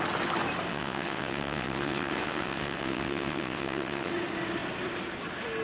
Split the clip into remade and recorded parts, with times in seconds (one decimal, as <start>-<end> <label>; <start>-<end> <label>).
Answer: 0.0-0.7 recorded; 0.7-4.1 remade; 4.1-5.6 recorded